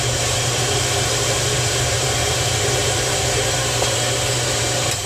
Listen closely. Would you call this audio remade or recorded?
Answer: remade